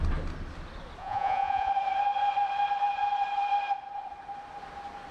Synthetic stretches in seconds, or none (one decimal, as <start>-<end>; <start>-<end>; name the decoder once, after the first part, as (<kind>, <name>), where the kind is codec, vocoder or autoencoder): 1.0-1.7 (vocoder, Vocos)